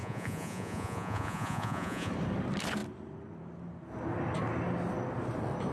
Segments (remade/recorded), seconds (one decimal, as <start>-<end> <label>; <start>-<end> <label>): 0.0-2.1 remade; 2.1-5.7 recorded

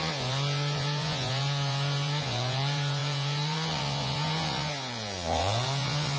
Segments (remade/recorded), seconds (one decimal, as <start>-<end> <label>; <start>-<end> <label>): 0.0-6.2 remade

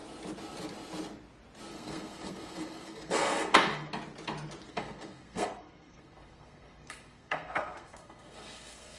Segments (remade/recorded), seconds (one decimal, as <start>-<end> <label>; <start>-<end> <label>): 0.0-1.7 recorded; 1.7-3.7 remade; 3.7-4.7 recorded; 4.7-9.0 remade

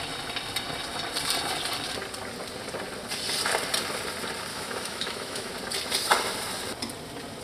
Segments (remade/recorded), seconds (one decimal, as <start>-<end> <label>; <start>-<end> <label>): 0.0-4.5 recorded; 4.5-5.5 remade; 5.5-7.4 recorded

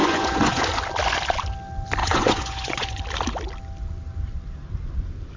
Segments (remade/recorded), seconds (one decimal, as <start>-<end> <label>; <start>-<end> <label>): 0.0-0.6 remade; 0.6-2.0 recorded; 2.0-3.0 remade; 3.0-5.4 recorded

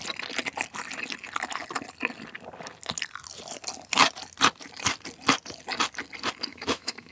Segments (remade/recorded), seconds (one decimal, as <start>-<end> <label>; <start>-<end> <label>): 0.0-6.5 recorded; 6.5-7.1 remade

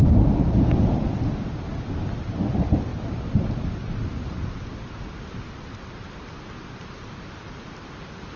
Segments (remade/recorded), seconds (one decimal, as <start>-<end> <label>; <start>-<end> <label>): 0.0-8.4 recorded

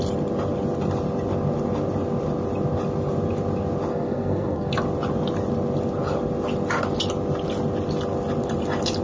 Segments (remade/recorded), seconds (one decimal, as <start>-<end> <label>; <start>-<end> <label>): 0.0-3.9 recorded; 3.9-4.7 remade; 4.7-9.0 recorded